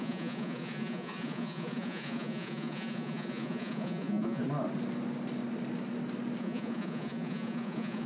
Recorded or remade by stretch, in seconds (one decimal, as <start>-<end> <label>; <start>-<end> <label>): 0.0-4.4 remade; 4.4-6.4 recorded; 6.4-8.1 remade